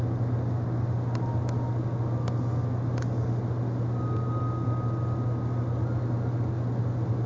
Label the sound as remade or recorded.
recorded